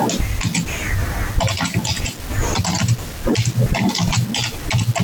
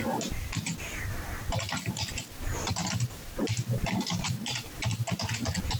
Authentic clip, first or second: first